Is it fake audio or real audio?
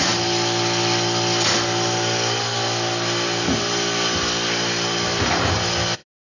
real